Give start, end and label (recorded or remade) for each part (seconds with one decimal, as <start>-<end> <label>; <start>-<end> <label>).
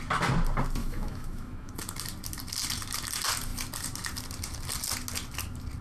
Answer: 0.0-0.8 recorded; 0.8-1.7 remade; 1.7-5.8 recorded